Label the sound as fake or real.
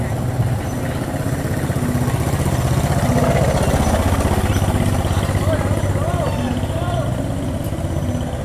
real